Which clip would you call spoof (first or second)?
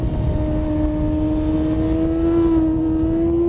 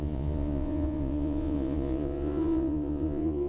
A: second